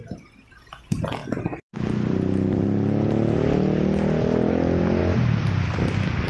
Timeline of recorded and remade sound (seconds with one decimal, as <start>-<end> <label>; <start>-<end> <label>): 0.0-6.3 recorded

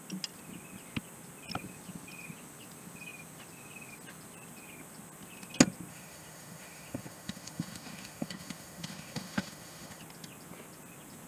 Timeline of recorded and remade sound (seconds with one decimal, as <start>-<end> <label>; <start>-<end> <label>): 0.0-5.9 recorded; 5.9-10.0 remade; 10.0-11.3 recorded

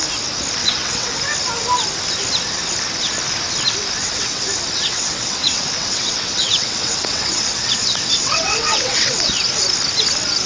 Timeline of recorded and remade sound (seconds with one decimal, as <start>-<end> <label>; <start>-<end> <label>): 0.0-0.6 recorded; 0.6-1.2 remade; 1.2-4.0 recorded; 4.0-4.5 remade; 4.5-4.9 recorded; 4.9-9.3 remade; 9.3-10.5 recorded